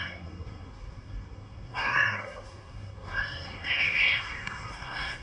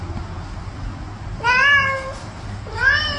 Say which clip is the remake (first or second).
first